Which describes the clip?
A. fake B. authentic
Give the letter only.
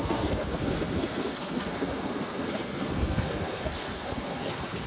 A